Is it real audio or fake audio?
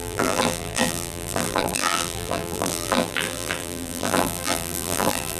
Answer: fake